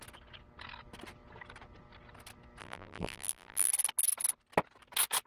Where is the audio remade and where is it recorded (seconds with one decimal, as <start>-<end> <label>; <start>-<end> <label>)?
0.0-2.6 recorded; 2.6-3.7 remade; 3.7-5.3 recorded